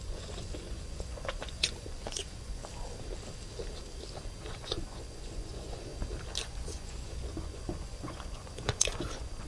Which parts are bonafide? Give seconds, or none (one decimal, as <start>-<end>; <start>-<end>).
2.6-4.4; 5.9-6.4